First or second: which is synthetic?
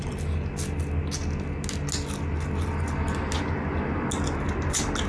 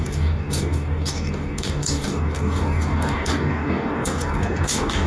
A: second